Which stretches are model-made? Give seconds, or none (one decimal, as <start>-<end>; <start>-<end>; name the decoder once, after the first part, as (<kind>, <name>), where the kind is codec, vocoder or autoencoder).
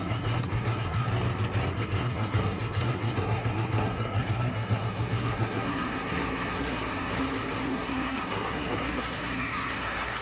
0.0-1.1 (codec, SNAC); 1.7-7.1; 7.6-10.2